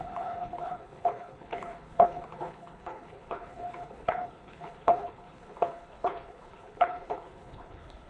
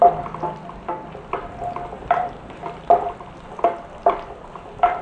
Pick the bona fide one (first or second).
second